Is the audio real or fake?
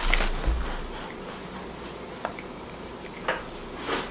real